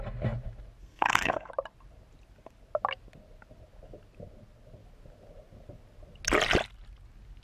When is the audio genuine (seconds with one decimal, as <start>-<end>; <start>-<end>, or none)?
0.0-0.8; 1.5-7.4